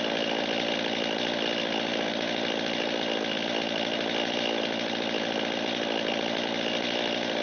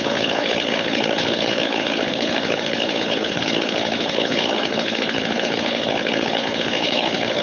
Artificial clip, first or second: second